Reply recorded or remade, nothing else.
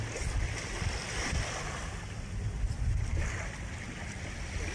recorded